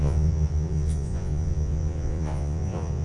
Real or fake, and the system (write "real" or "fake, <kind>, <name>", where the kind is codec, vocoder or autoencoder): fake, vocoder, Vocos